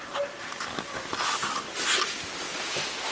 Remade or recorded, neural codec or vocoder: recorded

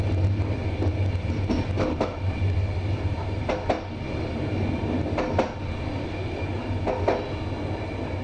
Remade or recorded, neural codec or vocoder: recorded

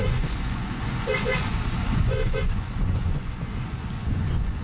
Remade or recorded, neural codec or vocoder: remade, vocoder, Vocos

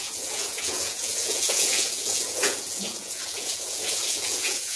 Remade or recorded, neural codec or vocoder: remade, vocoder, Vocos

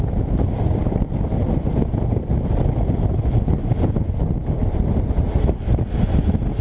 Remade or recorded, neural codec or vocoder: recorded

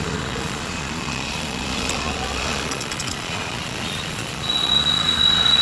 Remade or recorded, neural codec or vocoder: remade, vocoder, Vocos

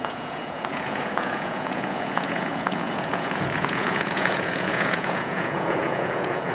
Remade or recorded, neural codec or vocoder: remade, vocoder, Vocos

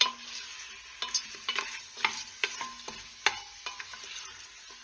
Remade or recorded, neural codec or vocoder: recorded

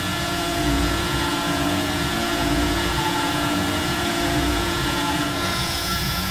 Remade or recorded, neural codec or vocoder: remade, vocoder, Vocos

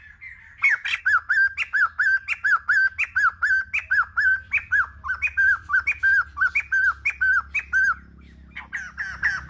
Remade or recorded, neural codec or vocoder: recorded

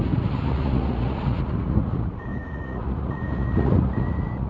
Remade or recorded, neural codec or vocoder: remade, vocoder, Vocos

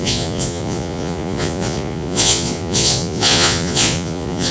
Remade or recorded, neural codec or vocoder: remade, vocoder, Vocos